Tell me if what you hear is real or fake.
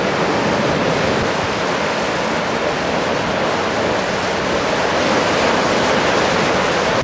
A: real